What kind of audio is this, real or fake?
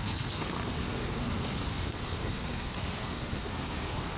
fake